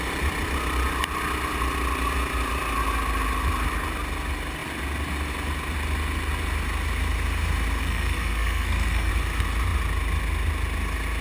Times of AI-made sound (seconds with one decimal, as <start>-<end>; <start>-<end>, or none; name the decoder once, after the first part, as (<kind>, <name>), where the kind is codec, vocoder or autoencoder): 7.8-9.1 (codec, SNAC)